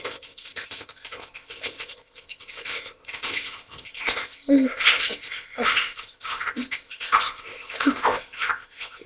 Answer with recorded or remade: remade